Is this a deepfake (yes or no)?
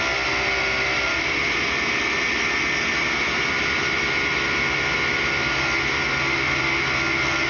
no